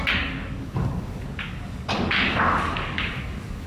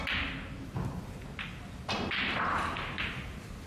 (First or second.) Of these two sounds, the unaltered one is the second